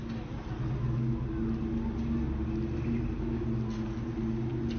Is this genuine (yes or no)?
yes